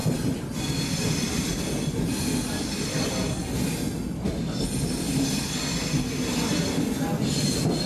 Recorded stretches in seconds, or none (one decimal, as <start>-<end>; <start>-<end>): 0.0-7.9